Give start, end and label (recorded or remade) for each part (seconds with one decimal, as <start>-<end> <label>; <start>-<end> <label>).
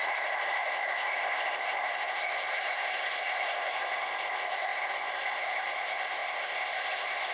0.0-7.3 remade